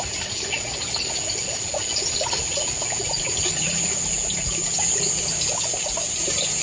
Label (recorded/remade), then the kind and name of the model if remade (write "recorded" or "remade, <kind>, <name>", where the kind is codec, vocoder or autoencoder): recorded